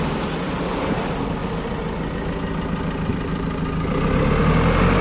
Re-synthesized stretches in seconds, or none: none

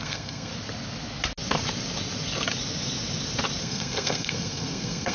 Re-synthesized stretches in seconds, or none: 0.0-0.5; 3.6-5.1

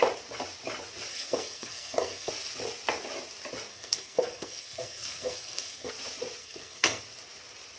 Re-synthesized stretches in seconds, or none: 1.1-2.3; 3.7-5.9; 6.4-7.0

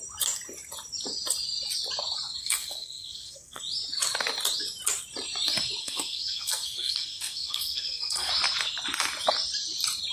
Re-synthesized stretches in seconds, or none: 2.4-3.6; 5.8-8.3